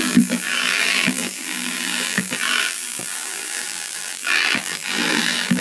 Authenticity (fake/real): fake